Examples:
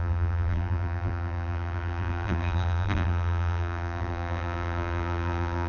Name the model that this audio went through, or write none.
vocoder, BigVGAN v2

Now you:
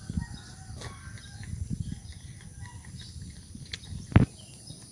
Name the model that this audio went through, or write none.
none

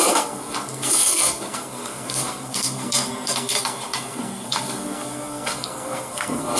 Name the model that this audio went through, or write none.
codec, SNAC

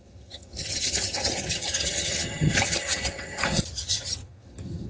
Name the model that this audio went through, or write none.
vocoder, HiFi-GAN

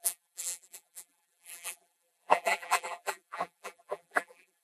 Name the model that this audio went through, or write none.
vocoder, BigVGAN v2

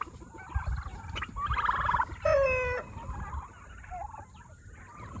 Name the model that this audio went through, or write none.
none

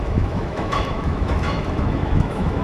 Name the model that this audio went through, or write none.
autoencoder, DAC-VAE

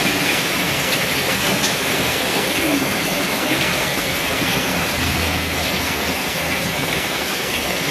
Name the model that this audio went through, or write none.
codec, SNAC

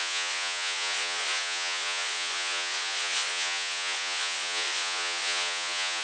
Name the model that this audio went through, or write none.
vocoder, Vocos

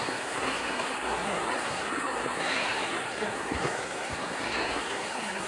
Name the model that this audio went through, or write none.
codec, SNAC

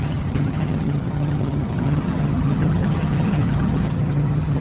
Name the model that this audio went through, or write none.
vocoder, HiFi-GAN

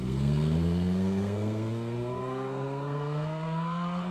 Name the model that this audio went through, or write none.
codec, SNAC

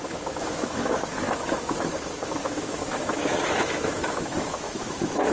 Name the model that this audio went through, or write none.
autoencoder, DAC-VAE